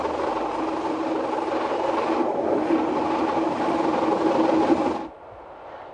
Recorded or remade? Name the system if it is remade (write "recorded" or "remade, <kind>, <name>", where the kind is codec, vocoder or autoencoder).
recorded